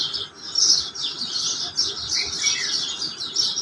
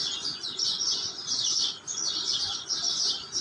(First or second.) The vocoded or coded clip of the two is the second